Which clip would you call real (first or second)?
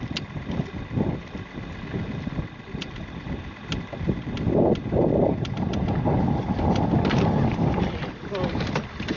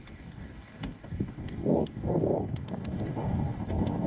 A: first